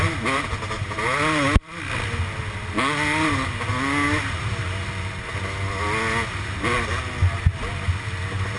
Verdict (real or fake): real